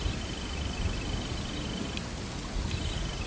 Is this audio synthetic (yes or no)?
no